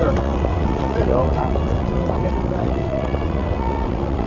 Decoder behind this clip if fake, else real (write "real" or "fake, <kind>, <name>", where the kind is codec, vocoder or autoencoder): fake, vocoder, WaveNeXt